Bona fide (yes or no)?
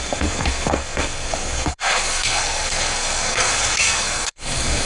no